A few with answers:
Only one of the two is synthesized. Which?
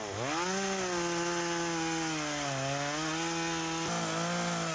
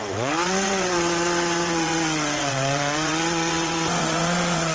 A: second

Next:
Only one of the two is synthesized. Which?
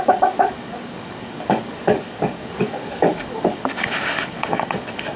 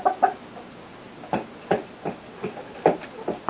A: first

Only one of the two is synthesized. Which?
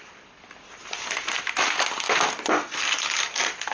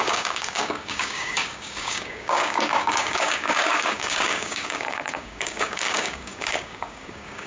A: second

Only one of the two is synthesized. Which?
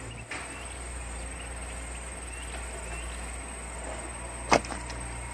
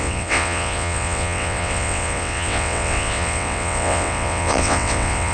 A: second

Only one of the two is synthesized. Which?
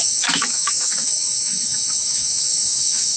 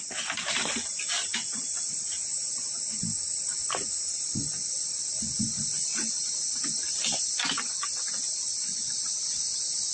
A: first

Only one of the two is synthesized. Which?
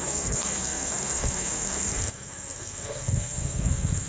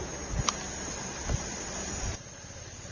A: first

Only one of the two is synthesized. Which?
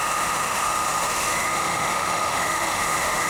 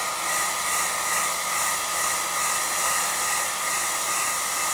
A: first